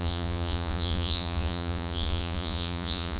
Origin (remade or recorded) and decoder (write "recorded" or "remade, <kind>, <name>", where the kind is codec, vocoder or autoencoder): remade, vocoder, Vocos